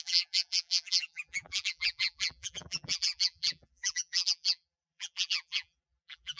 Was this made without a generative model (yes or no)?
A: no